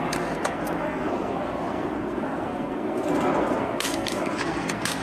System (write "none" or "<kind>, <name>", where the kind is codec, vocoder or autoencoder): codec, SNAC